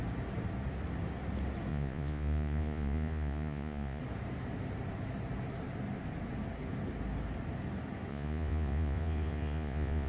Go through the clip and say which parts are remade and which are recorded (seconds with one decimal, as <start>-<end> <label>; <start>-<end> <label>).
0.0-1.7 recorded; 1.7-4.0 remade; 4.0-8.1 recorded; 8.1-10.1 remade